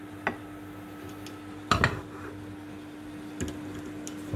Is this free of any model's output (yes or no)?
yes